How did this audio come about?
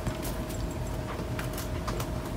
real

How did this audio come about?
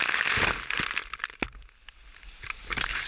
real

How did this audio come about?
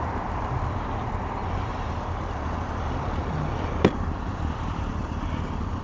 fake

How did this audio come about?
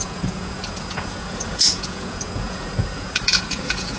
fake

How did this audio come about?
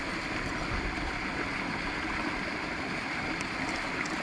real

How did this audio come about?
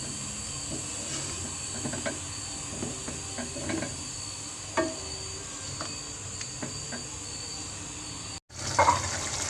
real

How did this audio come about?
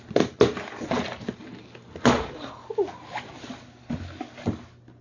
real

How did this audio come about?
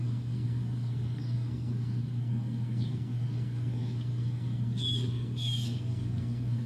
fake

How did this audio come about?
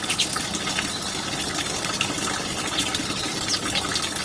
real